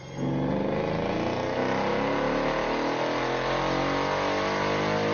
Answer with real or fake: real